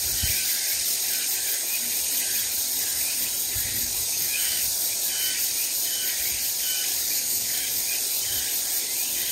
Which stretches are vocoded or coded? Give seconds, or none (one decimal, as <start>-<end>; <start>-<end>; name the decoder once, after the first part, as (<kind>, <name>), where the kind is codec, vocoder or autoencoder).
3.8-4.6 (codec, DAC); 6.9-7.8